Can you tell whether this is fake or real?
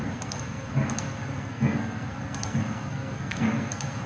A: fake